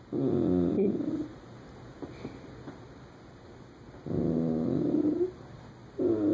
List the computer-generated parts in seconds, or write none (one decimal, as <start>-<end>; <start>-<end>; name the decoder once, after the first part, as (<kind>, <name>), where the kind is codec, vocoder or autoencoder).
none